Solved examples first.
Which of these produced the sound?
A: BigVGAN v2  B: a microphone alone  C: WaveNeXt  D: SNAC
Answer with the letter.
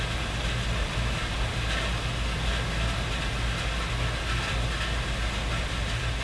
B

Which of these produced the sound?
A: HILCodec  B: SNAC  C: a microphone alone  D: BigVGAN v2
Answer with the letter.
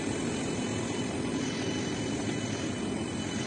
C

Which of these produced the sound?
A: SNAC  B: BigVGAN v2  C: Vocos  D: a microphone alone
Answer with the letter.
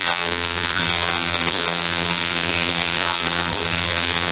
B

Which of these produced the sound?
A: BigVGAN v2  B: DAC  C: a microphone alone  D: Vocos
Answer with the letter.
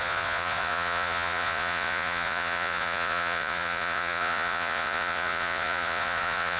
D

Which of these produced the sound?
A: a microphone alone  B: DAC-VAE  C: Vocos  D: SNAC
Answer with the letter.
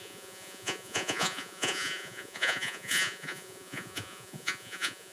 C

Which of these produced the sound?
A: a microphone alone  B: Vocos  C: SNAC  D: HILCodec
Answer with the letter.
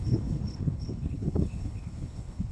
D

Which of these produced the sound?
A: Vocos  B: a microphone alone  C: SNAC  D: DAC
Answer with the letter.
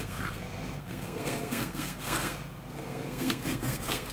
C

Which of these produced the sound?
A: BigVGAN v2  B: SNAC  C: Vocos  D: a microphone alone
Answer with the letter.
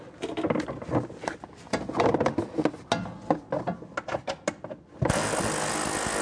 D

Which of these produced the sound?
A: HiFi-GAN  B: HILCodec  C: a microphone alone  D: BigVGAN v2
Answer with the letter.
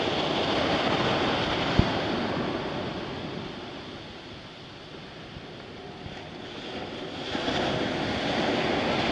C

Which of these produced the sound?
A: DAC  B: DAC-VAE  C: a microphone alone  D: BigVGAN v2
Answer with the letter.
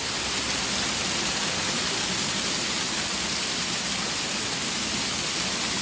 C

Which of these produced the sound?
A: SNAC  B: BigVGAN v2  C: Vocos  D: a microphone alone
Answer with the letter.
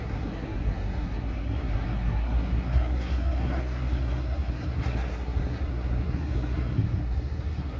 A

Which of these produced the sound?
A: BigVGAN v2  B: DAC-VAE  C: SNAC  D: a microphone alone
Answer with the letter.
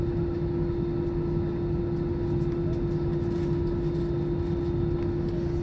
D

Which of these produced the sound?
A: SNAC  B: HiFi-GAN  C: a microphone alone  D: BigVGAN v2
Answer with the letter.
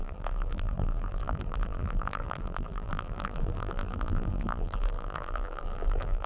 D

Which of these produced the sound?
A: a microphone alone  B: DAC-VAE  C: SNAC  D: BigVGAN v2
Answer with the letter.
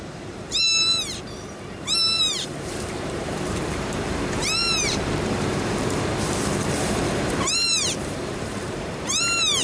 D